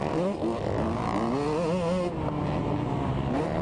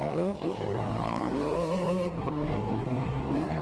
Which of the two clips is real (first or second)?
first